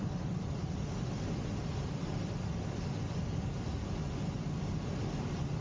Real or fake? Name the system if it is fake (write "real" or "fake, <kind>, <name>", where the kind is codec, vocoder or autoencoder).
real